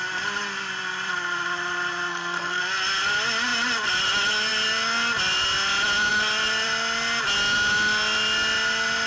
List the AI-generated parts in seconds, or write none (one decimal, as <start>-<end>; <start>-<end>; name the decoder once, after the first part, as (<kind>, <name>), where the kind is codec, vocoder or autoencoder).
2.1-2.6 (codec, SNAC)